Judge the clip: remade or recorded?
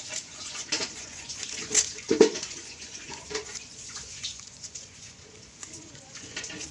remade